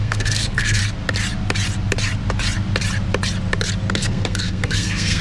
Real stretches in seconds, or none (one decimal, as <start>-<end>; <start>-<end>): 0.8-3.9